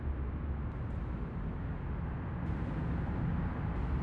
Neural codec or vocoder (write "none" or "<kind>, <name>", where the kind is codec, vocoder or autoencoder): none